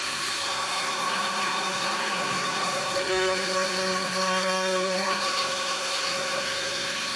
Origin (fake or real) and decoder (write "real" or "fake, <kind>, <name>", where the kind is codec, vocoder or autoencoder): fake, codec, SNAC